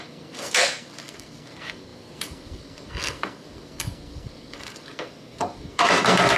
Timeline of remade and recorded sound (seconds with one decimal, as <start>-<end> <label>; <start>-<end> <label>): 0.0-6.4 remade